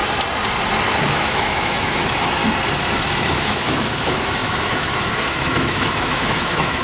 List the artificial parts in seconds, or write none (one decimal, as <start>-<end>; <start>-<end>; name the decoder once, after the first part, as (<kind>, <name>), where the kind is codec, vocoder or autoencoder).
1.0-2.4 (autoencoder, DAC-VAE); 3.3-6.8